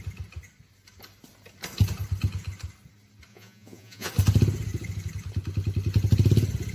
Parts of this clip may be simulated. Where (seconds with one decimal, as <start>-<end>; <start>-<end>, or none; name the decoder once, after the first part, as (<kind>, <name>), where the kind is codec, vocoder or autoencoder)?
3.3-4.1 (vocoder, Vocos)